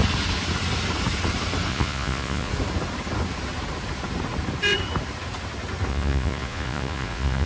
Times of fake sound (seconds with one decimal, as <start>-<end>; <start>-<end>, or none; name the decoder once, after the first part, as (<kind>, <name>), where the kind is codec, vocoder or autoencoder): 1.7-2.5 (vocoder, Vocos); 5.9-7.5